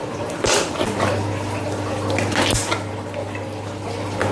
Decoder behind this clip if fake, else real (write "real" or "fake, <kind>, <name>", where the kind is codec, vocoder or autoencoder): real